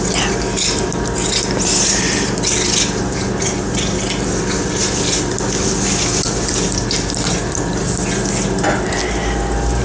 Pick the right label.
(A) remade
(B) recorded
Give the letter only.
B